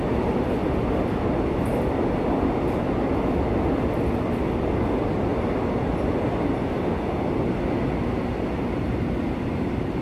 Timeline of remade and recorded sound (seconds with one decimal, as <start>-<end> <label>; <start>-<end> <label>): 0.0-10.0 recorded